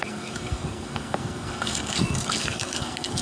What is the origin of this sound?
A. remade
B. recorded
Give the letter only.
A